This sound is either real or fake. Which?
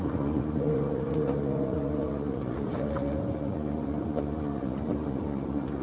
fake